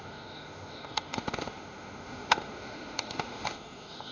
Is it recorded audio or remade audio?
remade